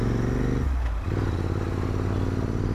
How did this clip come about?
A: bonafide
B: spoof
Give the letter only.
A